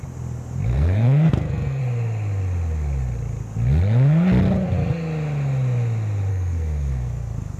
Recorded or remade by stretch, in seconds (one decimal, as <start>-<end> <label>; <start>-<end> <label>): 0.0-0.7 recorded; 0.7-1.8 remade; 1.8-6.3 recorded; 6.3-7.6 remade